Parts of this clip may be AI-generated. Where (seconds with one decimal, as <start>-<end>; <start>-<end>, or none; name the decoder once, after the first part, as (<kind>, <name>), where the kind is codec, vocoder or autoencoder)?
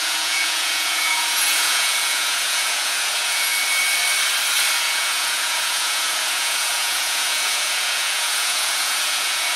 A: 0.0-3.5 (vocoder, Vocos); 4.8-9.6